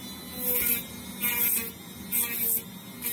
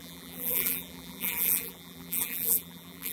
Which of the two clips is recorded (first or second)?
first